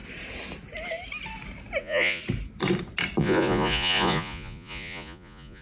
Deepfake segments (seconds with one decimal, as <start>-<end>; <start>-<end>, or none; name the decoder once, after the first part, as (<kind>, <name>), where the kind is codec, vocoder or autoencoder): 1.8-2.2 (vocoder, Vocos); 3.2-5.6